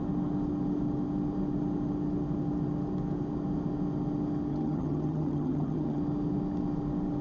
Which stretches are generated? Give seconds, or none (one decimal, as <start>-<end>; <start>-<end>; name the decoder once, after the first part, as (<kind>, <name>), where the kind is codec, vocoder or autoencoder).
4.5-6.0 (vocoder, HiFi-GAN)